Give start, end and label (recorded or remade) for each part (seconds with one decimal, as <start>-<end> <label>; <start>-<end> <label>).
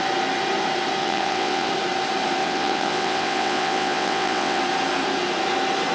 0.0-1.0 recorded; 1.0-1.7 remade; 1.7-2.4 recorded; 2.4-4.6 remade; 4.6-5.9 recorded